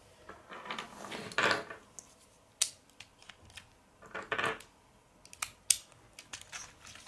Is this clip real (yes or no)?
yes